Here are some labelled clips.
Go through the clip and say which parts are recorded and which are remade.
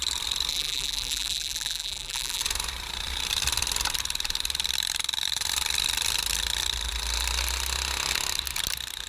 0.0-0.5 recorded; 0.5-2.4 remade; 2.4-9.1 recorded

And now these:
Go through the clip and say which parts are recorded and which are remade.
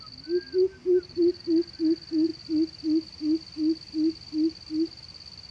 0.0-0.8 recorded; 0.8-1.4 remade; 1.4-5.5 recorded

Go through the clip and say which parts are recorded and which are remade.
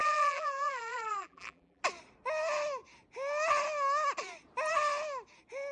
0.0-1.8 remade; 1.8-5.7 recorded